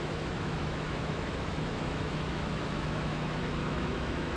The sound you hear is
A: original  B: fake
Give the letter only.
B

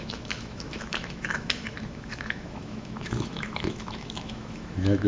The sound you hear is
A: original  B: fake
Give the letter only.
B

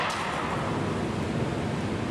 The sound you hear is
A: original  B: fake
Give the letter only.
A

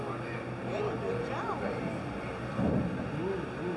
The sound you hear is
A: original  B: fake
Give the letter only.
A